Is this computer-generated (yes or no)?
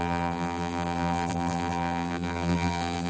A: yes